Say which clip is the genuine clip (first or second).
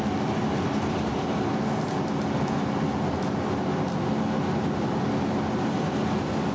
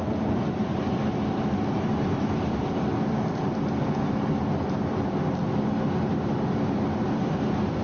first